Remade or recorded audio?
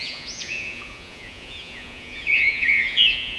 remade